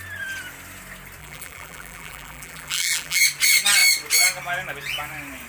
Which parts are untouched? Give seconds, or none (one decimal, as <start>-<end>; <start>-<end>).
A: 0.0-1.2; 3.2-5.5